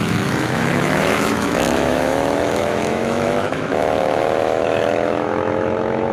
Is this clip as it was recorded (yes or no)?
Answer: no